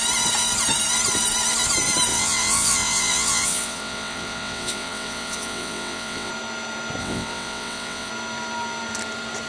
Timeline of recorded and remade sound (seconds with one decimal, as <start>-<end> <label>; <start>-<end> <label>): 0.0-2.1 recorded; 2.1-6.3 remade; 6.3-7.0 recorded; 7.0-8.1 remade; 8.1-9.5 recorded